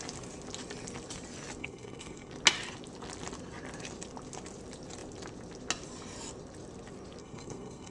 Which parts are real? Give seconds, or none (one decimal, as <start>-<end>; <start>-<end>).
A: 0.0-1.6; 2.3-7.2